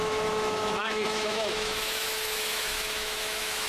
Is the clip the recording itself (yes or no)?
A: no